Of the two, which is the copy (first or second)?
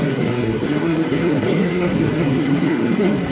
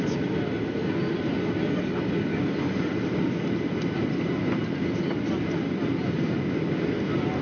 first